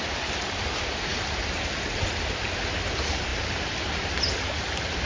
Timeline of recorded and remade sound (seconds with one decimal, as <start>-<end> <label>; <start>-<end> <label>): 0.0-5.1 recorded